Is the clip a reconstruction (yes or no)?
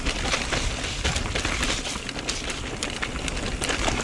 no